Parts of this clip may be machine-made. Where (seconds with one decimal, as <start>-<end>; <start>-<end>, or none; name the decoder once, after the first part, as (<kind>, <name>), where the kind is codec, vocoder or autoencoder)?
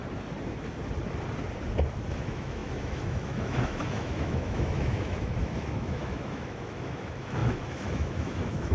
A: 2.1-8.7 (autoencoder, DAC-VAE)